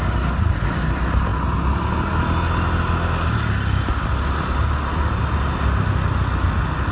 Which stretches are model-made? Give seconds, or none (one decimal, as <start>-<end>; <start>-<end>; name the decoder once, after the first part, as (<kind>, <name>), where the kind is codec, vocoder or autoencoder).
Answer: none